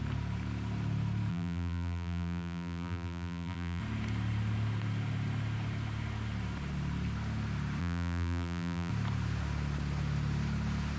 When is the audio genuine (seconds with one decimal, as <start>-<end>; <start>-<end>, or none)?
0.0-1.3; 3.8-7.8; 8.9-11.0